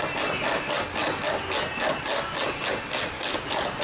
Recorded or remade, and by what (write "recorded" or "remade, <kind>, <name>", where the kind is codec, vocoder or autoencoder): recorded